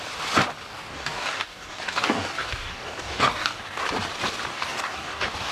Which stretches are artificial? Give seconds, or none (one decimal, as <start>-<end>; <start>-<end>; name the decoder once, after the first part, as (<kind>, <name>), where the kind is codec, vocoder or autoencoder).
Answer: 0.7-3.8 (codec, DAC); 4.5-5.5